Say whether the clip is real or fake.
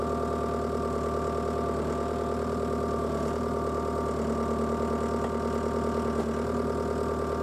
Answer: real